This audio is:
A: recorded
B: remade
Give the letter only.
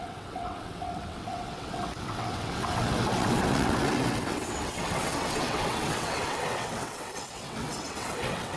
B